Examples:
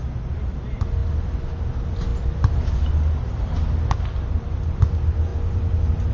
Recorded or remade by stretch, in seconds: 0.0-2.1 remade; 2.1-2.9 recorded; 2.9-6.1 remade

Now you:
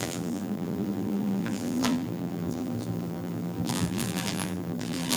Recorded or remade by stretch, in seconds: 0.0-5.2 remade

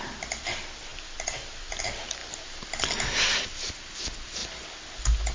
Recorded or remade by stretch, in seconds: 0.0-0.9 recorded; 0.9-1.8 remade; 1.8-5.3 recorded

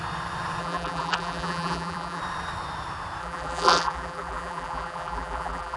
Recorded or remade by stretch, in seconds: 0.0-0.6 recorded; 0.6-2.2 remade; 2.2-3.2 recorded; 3.2-5.8 remade